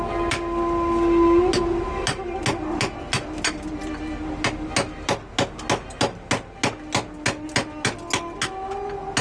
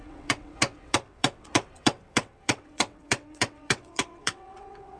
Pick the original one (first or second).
first